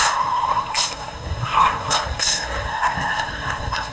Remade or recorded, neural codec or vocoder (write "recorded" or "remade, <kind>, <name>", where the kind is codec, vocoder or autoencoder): remade, codec, SNAC